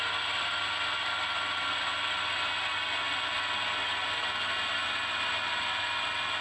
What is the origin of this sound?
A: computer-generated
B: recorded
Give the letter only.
B